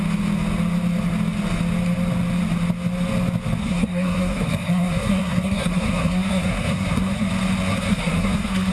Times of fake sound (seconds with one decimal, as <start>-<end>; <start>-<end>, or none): 3.6-7.3; 7.7-8.7